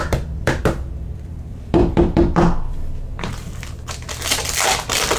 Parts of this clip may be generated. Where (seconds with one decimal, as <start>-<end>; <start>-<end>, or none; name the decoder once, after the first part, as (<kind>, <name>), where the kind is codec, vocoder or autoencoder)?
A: 0.0-5.2 (vocoder, BigVGAN v2)